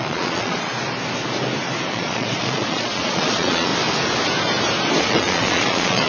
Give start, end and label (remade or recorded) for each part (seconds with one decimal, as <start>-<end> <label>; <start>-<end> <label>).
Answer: 0.0-0.7 remade; 0.7-1.9 recorded; 1.9-3.7 remade; 3.7-5.0 recorded; 5.0-6.1 remade